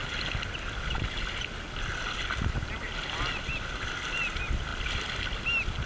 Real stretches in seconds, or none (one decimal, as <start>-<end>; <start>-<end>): 0.0-5.9